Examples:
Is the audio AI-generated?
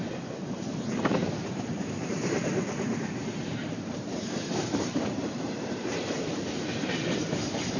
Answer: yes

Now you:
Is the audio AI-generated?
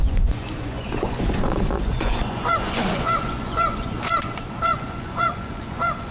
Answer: yes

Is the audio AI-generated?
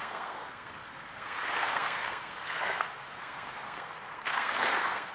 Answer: yes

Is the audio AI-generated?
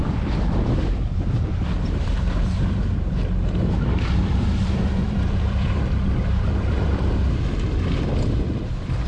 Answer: yes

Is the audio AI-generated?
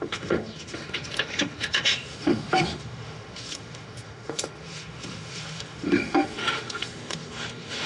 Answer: yes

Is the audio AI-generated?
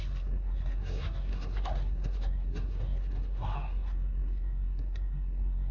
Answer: yes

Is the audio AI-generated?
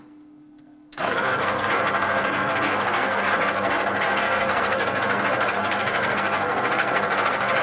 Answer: yes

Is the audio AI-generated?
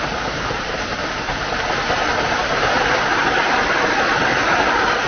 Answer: no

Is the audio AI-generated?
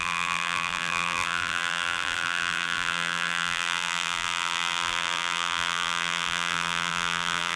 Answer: yes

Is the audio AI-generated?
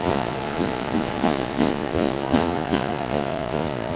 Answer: yes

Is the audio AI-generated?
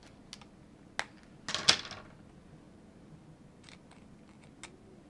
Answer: no